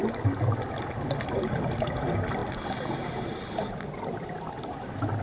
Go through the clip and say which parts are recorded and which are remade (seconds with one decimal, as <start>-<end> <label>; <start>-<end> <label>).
0.0-5.2 recorded